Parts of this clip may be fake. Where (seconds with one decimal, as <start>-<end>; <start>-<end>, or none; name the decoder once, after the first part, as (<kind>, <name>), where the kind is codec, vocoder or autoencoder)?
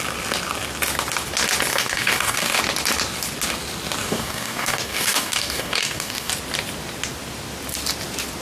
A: 1.7-2.6 (codec, DAC); 4.0-6.3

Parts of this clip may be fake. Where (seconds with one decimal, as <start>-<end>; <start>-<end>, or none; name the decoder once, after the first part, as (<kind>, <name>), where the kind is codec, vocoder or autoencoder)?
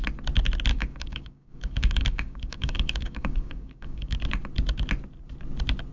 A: 0.7-4.2 (codec, DAC)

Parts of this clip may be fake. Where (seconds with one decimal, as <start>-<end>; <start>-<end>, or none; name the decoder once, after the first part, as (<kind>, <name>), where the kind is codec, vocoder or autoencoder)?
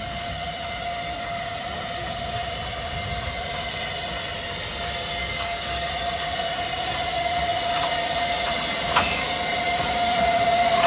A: 5.2-5.9 (codec, DAC)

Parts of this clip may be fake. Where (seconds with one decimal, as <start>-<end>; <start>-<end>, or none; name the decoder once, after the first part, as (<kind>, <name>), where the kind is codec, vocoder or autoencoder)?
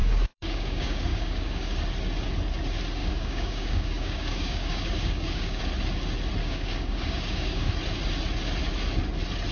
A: 0.0-1.8 (codec, DAC); 3.0-5.6; 6.4-7.7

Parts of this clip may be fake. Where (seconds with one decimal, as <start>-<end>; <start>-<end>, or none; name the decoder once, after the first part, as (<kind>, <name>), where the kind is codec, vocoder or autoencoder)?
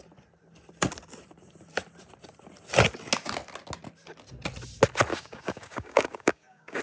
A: 5.1-6.8 (codec, DAC)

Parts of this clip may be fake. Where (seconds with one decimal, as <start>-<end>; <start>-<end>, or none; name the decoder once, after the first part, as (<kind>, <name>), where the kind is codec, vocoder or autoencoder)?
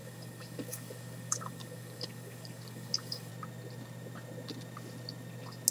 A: 0.0-3.3 (codec, DAC)